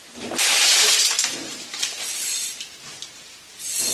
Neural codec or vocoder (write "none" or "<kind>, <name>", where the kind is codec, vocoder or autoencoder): vocoder, BigVGAN v2